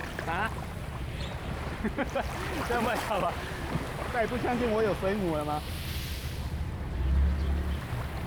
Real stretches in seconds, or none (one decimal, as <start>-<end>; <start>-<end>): 3.7-8.3